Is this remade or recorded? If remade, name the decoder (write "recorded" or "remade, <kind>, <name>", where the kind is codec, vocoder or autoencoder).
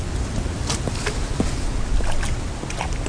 recorded